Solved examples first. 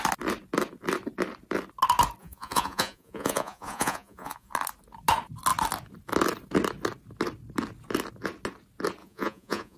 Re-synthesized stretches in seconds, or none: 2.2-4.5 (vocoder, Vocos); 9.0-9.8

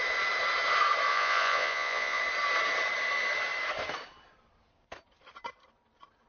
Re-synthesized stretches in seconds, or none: 1.1-2.2 (vocoder, Vocos)

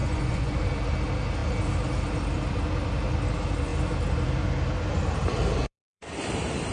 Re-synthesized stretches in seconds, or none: 0.0-0.6 (vocoder, Vocos); 5.6-6.1

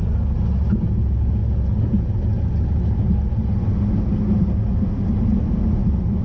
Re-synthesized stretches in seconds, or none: none

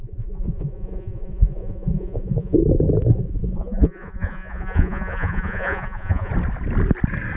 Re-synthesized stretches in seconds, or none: 0.0-2.6 (vocoder, Vocos); 3.1-6.3

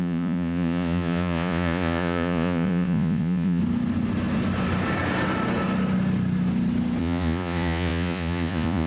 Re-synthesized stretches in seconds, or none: 0.0-3.6 (vocoder, Vocos); 7.0-8.9

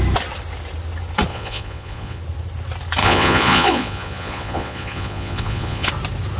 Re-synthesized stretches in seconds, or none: 1.3-2.2 (vocoder, Vocos); 3.0-5.9